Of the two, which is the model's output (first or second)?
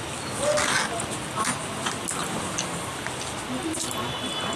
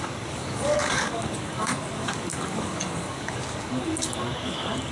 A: second